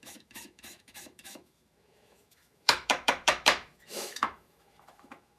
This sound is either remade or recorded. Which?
remade